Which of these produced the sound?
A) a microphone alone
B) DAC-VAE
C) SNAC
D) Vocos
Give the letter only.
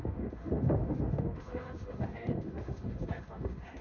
B